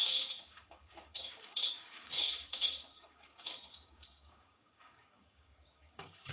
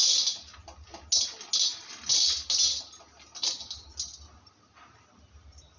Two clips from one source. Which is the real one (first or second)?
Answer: second